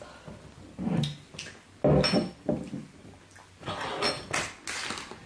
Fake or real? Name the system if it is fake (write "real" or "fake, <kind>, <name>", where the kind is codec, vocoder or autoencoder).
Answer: real